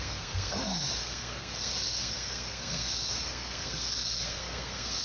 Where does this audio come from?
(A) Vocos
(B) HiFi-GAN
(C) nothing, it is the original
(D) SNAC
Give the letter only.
D